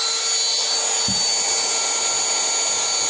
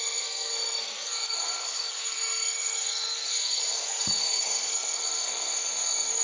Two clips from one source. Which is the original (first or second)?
first